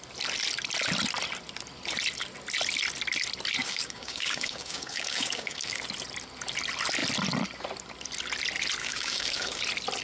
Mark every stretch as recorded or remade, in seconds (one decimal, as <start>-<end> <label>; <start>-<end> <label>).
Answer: 0.0-3.6 recorded; 3.6-5.8 remade; 5.8-8.8 recorded; 8.8-9.6 remade; 9.6-10.0 recorded